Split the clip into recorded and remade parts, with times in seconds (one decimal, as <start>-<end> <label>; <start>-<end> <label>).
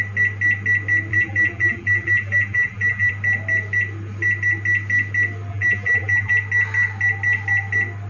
0.0-1.1 recorded; 1.1-3.1 remade; 3.1-5.5 recorded; 5.5-6.3 remade; 6.3-8.1 recorded